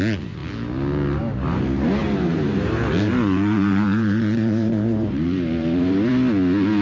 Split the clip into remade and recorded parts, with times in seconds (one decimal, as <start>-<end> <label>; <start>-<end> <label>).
0.0-2.0 recorded; 2.0-6.1 remade; 6.1-6.8 recorded